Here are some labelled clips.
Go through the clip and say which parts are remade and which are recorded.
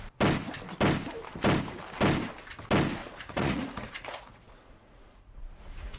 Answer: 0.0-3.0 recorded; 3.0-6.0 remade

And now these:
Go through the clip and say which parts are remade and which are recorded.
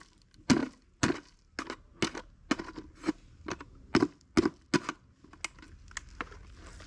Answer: 0.0-6.9 recorded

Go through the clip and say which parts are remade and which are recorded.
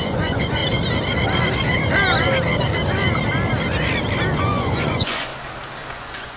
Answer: 0.0-0.6 remade; 0.6-4.4 recorded; 4.4-5.3 remade; 5.3-5.9 recorded; 5.9-6.4 remade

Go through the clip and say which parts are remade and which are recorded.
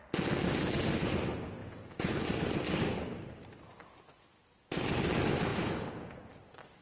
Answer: 0.0-1.6 recorded; 1.6-2.1 remade; 2.1-5.5 recorded; 5.5-6.3 remade; 6.3-6.8 recorded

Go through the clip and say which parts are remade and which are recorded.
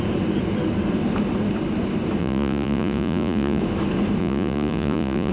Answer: 0.0-2.2 recorded; 2.2-3.6 remade; 3.6-4.2 recorded; 4.2-5.3 remade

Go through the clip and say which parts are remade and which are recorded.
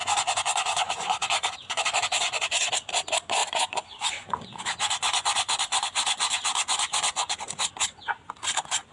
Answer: 0.0-2.7 remade; 2.7-3.4 recorded; 3.4-7.7 remade; 7.7-8.9 recorded